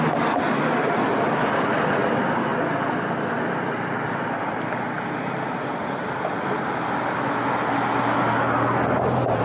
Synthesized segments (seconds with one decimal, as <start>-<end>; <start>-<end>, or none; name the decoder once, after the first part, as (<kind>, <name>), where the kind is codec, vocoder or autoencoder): none